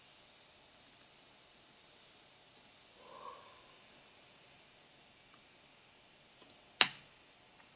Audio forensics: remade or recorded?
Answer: recorded